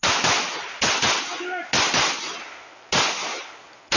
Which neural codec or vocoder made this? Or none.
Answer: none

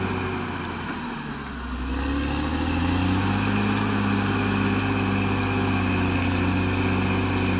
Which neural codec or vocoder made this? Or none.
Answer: none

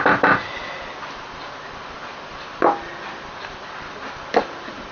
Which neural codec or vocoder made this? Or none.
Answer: none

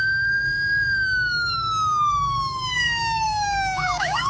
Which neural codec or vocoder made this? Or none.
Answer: codec, DAC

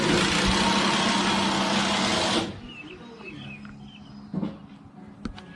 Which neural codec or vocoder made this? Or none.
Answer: none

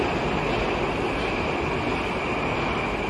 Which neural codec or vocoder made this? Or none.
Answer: none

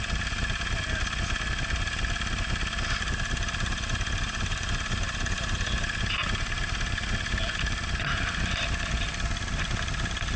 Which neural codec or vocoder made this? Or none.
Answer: none